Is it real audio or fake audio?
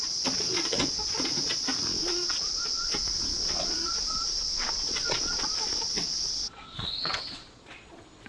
fake